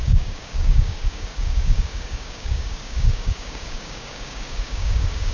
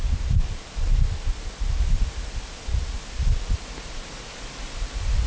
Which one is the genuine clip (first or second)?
second